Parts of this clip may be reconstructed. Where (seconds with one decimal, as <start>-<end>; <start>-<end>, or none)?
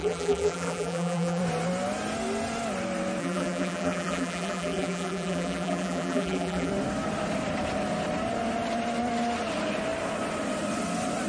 0.0-1.4; 3.2-6.7